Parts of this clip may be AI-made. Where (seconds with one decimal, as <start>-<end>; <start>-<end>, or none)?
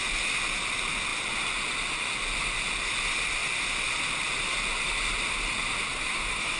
5.9-6.6